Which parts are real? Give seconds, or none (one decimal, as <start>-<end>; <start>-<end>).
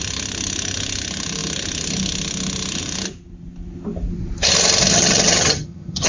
0.0-4.9